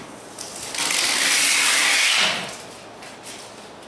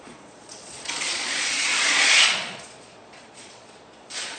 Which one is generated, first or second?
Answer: second